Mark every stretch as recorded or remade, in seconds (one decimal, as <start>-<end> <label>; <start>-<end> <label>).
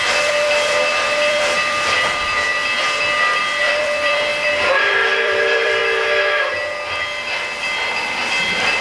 0.0-2.5 remade; 2.5-3.4 recorded; 3.4-5.8 remade; 5.8-7.9 recorded; 7.9-8.8 remade